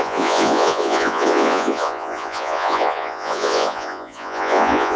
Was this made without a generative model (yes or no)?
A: no